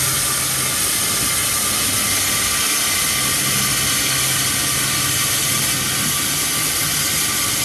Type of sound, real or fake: real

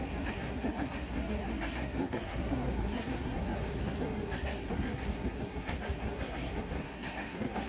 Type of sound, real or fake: fake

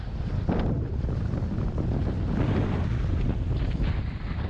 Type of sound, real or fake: real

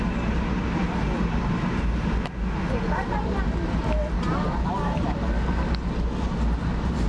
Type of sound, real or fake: real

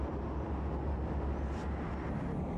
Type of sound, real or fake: real